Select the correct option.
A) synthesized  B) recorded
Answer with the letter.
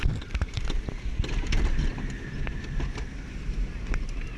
A